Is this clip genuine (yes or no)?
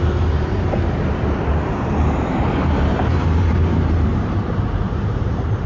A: no